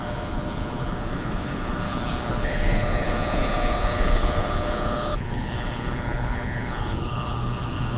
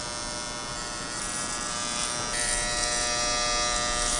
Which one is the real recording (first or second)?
second